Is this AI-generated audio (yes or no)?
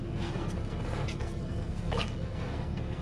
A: yes